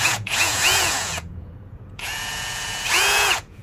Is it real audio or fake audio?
fake